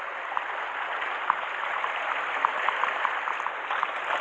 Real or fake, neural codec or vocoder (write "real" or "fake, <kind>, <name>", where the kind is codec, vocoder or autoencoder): real